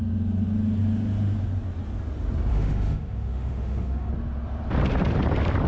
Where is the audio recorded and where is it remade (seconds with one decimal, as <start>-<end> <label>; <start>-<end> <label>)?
0.0-2.5 recorded; 2.5-4.1 remade; 4.1-5.7 recorded